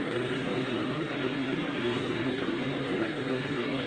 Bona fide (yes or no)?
no